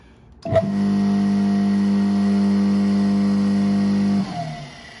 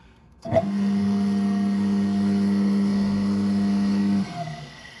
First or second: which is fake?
second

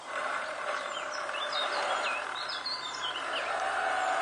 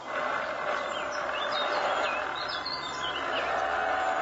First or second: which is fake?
first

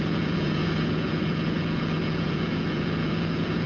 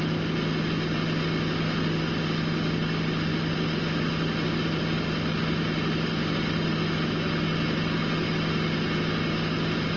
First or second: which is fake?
first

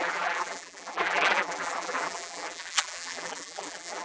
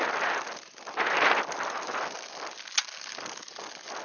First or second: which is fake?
first